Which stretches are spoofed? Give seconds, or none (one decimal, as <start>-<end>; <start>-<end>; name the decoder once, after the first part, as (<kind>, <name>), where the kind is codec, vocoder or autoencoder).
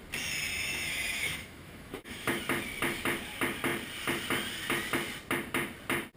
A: 0.5-2.4 (autoencoder, DAC-VAE)